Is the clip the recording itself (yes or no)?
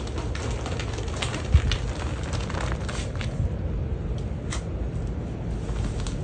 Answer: yes